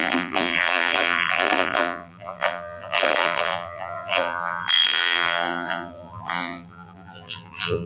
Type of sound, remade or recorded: remade